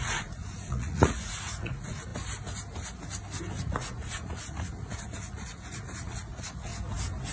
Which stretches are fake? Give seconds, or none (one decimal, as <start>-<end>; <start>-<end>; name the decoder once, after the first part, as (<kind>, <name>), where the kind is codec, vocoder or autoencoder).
0.0-2.1 (vocoder, Vocos); 3.6-6.7